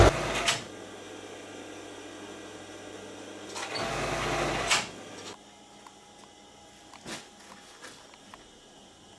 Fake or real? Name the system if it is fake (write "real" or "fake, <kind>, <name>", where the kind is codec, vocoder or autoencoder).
real